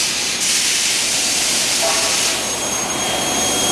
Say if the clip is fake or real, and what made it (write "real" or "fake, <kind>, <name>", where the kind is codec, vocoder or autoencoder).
fake, vocoder, BigVGAN v2